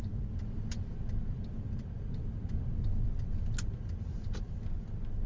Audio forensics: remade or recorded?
recorded